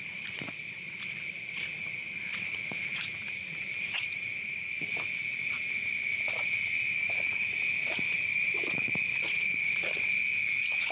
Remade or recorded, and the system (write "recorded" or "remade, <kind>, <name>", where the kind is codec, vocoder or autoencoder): remade, vocoder, Vocos